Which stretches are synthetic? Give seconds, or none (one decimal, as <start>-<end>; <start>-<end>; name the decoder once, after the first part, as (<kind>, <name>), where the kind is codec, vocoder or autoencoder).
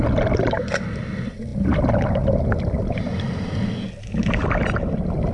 none